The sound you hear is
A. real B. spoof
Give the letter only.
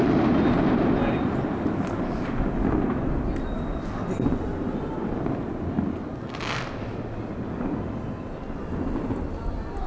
A